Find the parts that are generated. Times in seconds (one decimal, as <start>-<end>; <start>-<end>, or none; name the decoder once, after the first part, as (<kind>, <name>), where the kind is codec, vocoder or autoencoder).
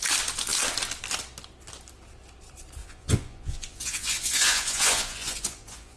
2.8-6.0 (vocoder, Vocos)